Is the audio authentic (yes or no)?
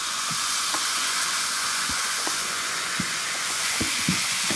no